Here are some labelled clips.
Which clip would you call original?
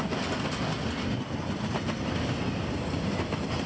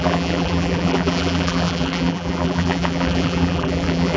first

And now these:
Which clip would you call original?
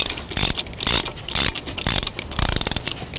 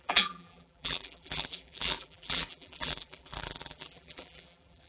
first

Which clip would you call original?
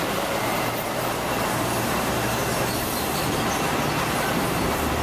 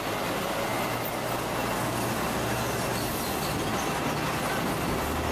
second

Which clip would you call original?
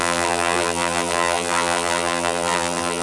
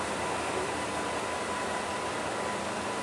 second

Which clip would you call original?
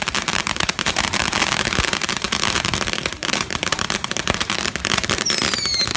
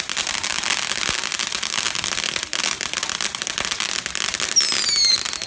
second